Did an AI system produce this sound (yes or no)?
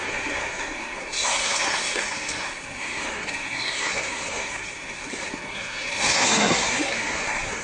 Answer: yes